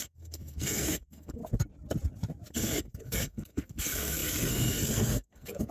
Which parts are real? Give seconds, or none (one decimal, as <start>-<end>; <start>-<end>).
1.4-2.5